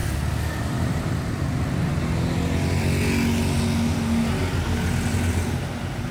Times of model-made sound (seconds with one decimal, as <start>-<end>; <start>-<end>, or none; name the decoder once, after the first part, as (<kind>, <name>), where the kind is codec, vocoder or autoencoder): 0.6-1.9 (vocoder, BigVGAN v2); 5.1-6.1